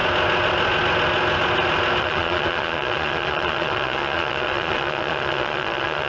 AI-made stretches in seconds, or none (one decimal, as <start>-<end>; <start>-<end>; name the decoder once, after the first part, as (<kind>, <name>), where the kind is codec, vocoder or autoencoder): 2.0-6.1 (vocoder, Vocos)